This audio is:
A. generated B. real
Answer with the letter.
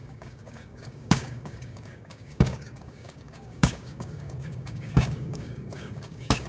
A